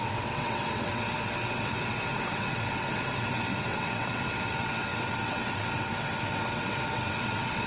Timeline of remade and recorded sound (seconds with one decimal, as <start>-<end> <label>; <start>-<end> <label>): 0.0-7.7 remade